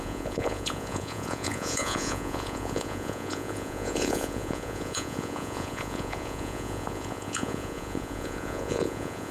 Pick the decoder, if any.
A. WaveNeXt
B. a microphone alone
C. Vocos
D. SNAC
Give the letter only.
C